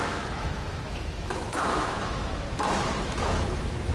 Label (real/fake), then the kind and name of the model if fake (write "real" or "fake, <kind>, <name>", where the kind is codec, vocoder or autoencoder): fake, autoencoder, DAC-VAE